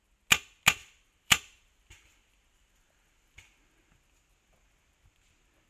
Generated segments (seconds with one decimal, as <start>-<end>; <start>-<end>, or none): 0.8-3.4